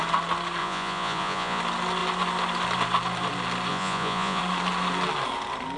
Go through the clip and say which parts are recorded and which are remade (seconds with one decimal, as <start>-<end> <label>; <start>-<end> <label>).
0.0-0.6 recorded; 0.6-1.6 remade; 1.6-3.7 recorded; 3.7-4.4 remade; 4.4-5.8 recorded